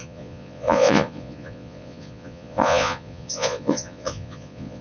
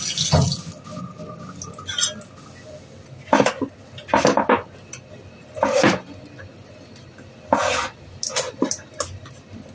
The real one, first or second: second